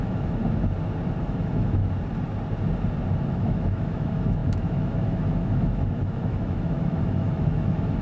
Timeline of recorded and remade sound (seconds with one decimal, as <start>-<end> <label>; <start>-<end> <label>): 0.0-0.4 remade; 0.4-1.2 recorded; 1.2-1.8 remade; 1.8-3.3 recorded; 3.3-8.0 remade